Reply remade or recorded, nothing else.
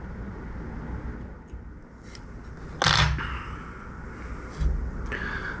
recorded